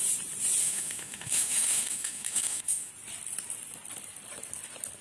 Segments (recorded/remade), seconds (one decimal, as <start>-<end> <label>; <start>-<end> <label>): 0.0-0.6 recorded; 0.6-2.9 remade; 2.9-5.0 recorded

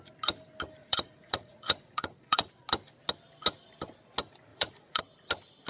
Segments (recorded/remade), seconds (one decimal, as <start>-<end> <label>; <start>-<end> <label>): 0.0-0.8 recorded; 0.8-2.5 remade; 2.5-4.5 recorded; 4.5-5.0 remade; 5.0-5.7 recorded